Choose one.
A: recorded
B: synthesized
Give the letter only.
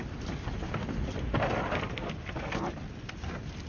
A